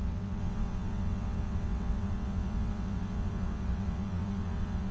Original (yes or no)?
no